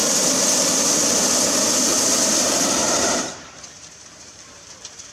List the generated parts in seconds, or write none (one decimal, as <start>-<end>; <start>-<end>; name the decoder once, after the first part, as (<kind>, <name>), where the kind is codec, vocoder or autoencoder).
1.9-5.1 (vocoder, BigVGAN v2)